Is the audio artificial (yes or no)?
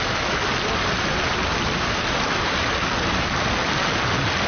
no